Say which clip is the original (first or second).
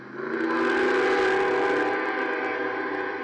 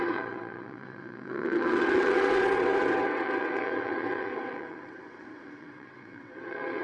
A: first